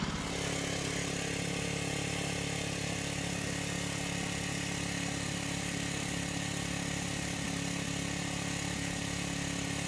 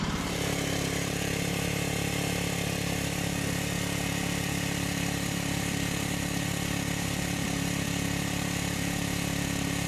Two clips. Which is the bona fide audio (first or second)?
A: first